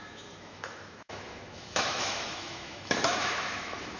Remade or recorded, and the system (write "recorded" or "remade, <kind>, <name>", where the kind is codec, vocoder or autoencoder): remade, autoencoder, DAC-VAE